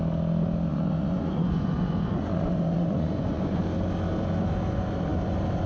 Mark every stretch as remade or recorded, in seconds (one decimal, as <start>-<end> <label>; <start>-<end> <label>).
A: 0.0-0.7 recorded; 0.7-3.6 remade; 3.6-5.7 recorded